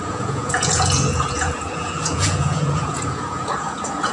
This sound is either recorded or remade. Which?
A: remade